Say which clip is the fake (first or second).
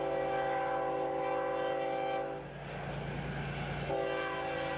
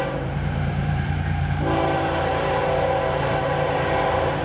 second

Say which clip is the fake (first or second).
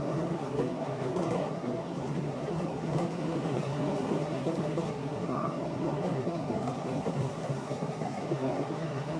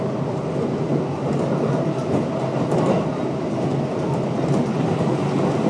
first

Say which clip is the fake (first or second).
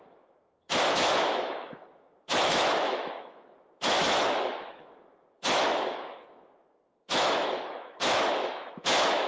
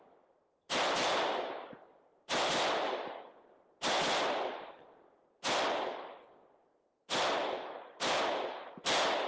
first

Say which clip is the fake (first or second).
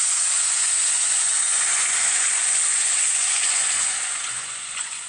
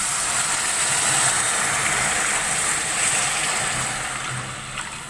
first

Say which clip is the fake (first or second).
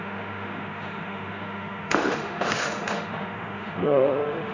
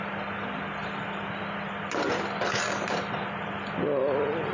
first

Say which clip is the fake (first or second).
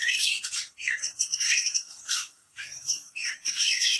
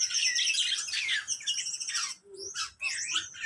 first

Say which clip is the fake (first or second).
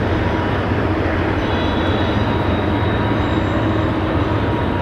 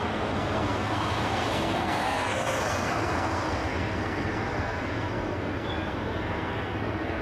second